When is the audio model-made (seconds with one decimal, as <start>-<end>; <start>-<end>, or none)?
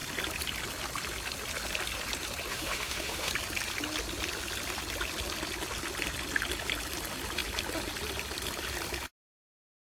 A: 2.5-3.3